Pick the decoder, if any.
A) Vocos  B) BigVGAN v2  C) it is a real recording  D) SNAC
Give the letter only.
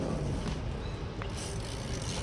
C